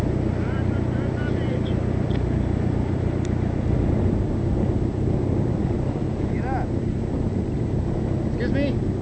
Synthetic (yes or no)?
no